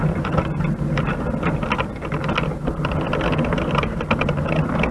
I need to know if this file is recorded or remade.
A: recorded